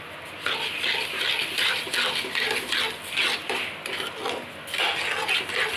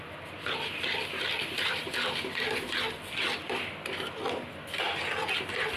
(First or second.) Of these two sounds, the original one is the first